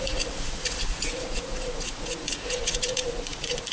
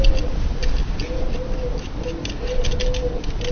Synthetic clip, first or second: first